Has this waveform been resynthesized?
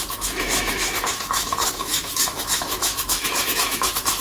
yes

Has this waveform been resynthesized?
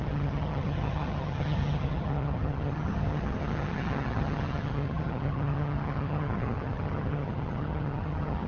yes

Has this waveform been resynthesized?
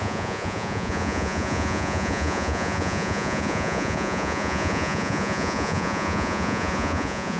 yes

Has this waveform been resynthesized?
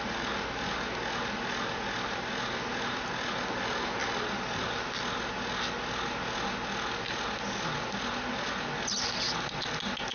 no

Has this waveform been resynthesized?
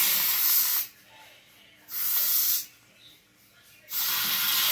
no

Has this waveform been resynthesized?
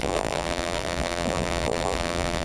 yes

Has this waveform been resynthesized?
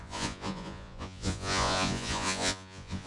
yes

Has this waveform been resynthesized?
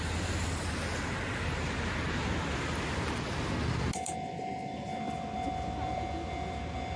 no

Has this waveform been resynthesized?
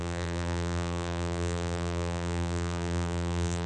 yes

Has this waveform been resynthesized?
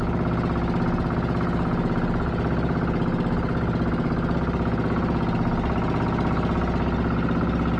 no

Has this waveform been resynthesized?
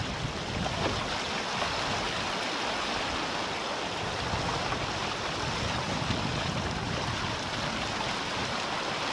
no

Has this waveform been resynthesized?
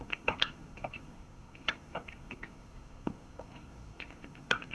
yes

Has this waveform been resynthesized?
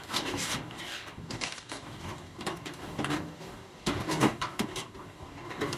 yes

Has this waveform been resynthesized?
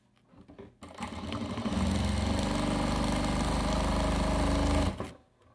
no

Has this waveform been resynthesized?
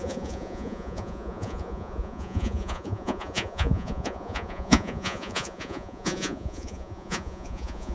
yes